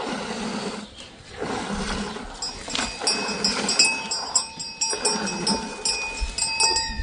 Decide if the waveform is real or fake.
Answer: real